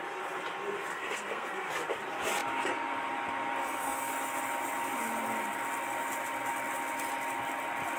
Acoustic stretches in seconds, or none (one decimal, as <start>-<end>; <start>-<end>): 0.0-0.9; 1.7-3.6; 4.1-8.0